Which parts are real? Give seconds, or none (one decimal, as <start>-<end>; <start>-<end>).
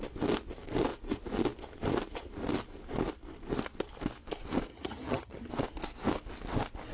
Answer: 0.0-4.7; 5.5-6.9